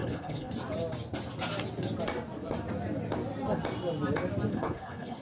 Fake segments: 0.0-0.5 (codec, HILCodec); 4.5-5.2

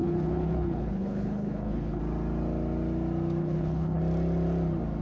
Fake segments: 0.0-2.0 (codec, HILCodec); 3.4-4.0